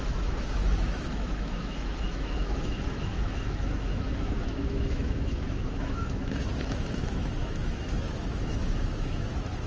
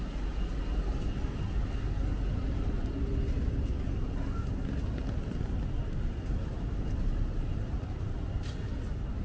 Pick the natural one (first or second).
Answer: second